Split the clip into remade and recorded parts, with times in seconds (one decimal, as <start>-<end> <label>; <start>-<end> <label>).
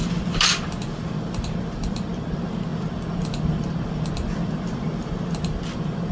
0.0-6.1 recorded